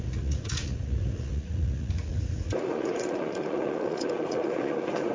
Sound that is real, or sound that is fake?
fake